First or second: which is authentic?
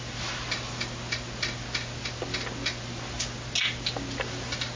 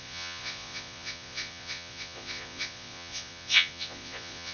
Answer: first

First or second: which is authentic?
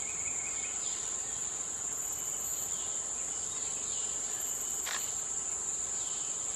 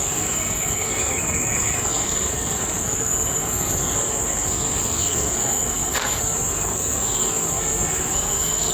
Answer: first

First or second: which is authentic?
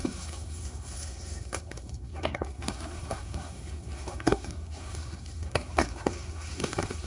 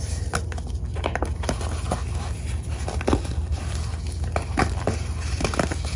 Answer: second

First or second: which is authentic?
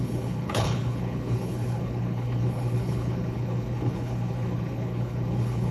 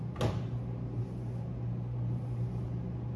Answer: second